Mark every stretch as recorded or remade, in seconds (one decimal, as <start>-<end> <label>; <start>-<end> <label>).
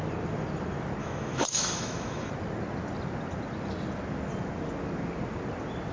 0.0-1.0 recorded; 1.0-2.3 remade; 2.3-5.9 recorded